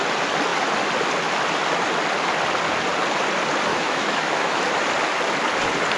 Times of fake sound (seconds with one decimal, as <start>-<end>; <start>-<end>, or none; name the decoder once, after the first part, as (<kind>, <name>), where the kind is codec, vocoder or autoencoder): 3.7-4.6 (autoencoder, DAC-VAE)